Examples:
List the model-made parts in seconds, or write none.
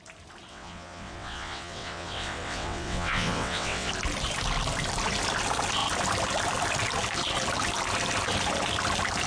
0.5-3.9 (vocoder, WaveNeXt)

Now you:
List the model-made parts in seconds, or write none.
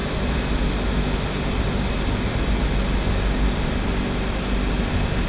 none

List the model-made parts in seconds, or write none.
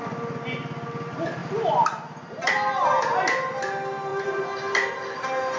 none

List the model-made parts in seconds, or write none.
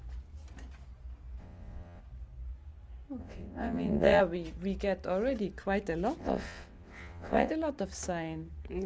1.4-2.0 (vocoder, WaveNeXt); 3.2-4.2; 6.2-7.5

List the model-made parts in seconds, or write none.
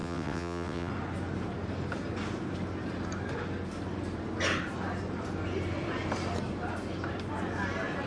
0.0-0.9 (vocoder, WaveNeXt)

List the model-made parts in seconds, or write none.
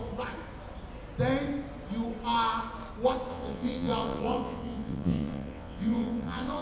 3.3-6.6 (vocoder, WaveNeXt)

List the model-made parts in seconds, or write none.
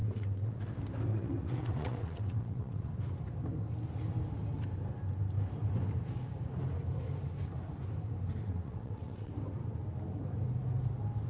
0.0-0.7 (vocoder, WaveNeXt); 1.1-2.9; 8.4-9.3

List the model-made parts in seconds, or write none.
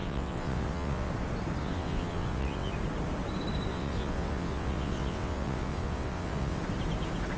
0.0-1.1 (vocoder, WaveNeXt); 1.6-2.7; 3.7-6.6